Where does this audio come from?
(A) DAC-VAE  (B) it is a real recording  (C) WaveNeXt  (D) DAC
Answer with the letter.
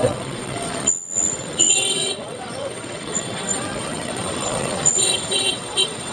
C